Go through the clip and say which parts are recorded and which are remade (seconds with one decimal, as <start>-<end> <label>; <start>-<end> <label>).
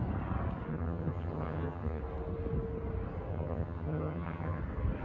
0.0-0.7 recorded; 0.7-2.0 remade; 2.0-3.3 recorded; 3.3-4.6 remade; 4.6-5.0 recorded